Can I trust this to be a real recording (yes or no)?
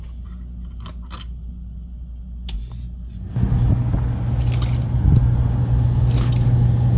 yes